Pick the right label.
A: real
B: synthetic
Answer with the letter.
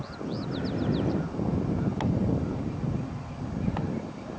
A